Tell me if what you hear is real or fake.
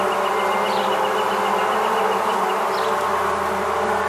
real